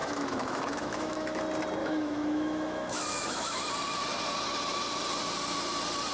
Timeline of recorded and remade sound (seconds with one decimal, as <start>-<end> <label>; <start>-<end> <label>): 0.0-1.4 remade; 1.4-1.8 recorded; 1.8-3.7 remade; 3.7-6.1 recorded